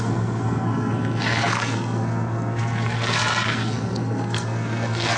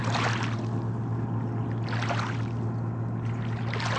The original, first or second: second